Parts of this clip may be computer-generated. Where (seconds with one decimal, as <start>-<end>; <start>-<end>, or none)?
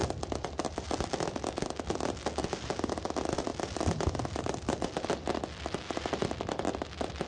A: none